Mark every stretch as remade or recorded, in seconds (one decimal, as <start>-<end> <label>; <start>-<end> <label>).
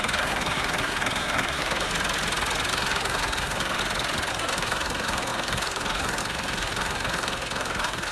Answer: 0.0-1.9 remade; 1.9-2.7 recorded; 2.7-3.8 remade; 3.8-4.3 recorded; 4.3-8.1 remade